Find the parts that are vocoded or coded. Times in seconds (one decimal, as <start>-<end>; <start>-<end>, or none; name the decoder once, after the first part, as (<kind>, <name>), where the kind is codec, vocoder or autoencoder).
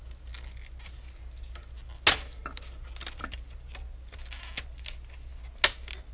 none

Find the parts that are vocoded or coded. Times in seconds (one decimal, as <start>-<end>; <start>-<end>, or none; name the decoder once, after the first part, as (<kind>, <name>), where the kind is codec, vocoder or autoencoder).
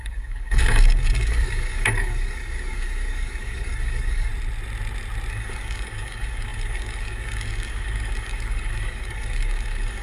0.0-4.3 (codec, DAC); 5.3-10.0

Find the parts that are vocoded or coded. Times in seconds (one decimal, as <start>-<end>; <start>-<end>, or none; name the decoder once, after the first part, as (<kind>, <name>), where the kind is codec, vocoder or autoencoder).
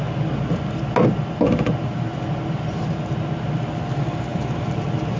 none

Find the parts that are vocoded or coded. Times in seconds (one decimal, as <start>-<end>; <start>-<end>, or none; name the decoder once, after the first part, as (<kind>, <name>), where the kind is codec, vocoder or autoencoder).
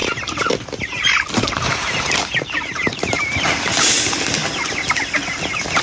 0.0-3.5 (vocoder, BigVGAN v2)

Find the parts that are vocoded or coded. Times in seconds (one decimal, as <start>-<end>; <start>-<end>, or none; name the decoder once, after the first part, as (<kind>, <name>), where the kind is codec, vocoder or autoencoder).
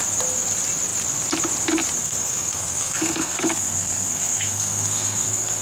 2.0-5.6 (codec, SNAC)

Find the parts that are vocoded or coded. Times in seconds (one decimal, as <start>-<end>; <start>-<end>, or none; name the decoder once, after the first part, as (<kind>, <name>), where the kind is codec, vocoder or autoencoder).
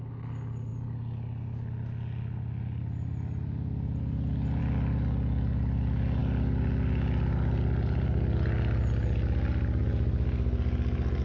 none